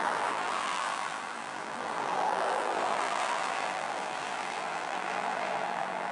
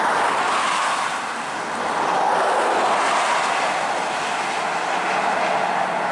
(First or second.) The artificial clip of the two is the first